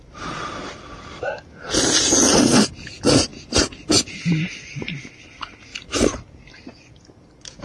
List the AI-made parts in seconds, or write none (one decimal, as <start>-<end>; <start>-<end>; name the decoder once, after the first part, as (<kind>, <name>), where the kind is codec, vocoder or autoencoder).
3.3-4.1 (vocoder, BigVGAN v2)